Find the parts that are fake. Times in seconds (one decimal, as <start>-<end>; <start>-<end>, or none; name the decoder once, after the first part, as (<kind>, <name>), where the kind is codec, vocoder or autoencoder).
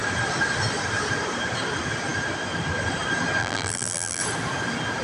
3.4-4.2 (vocoder, BigVGAN v2)